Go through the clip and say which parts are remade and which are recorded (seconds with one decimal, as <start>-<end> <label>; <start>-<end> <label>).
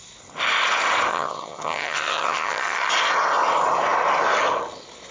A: 0.0-1.1 recorded; 1.1-2.9 remade; 2.9-5.1 recorded